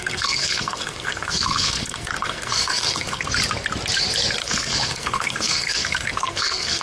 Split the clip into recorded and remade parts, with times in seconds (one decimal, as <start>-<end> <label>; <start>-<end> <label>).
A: 0.0-3.3 remade; 3.3-4.4 recorded; 4.4-6.8 remade